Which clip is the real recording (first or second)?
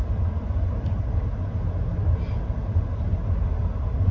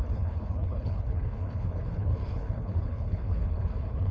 first